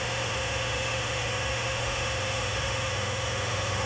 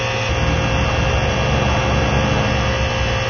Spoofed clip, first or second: first